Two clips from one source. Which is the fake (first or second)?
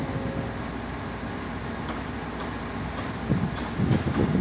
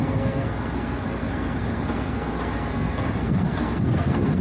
second